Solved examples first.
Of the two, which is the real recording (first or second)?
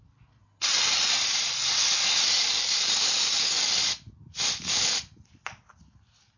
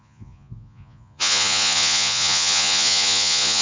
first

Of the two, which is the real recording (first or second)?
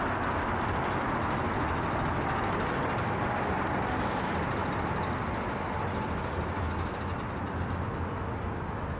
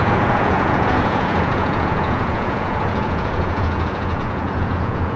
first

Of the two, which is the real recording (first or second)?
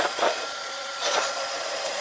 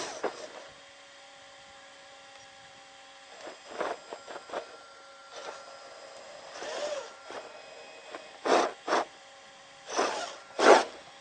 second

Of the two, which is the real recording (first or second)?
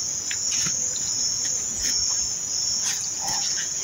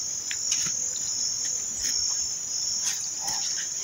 second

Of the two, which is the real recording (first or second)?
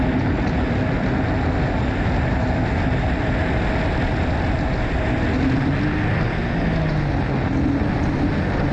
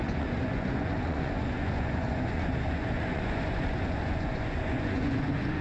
first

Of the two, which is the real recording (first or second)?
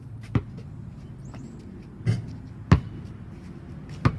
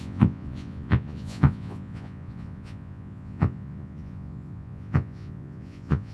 first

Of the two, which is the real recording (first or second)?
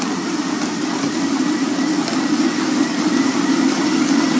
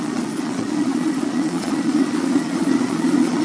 first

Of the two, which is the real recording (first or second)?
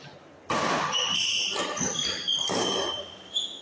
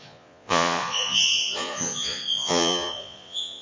first